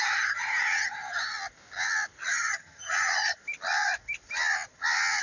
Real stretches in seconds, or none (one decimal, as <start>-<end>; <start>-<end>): 1.3-2.2; 3.4-5.2